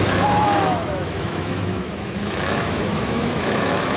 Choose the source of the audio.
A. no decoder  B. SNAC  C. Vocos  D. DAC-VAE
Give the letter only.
D